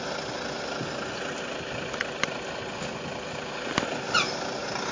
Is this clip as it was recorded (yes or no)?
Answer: yes